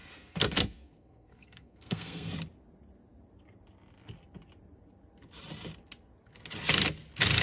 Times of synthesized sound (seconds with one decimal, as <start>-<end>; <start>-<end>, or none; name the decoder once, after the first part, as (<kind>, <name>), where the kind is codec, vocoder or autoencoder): 0.0-2.3 (codec, SNAC)